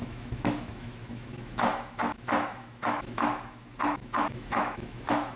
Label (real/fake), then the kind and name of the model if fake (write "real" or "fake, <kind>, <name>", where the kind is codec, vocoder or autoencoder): fake, autoencoder, DAC-VAE